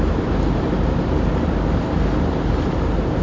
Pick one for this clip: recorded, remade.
recorded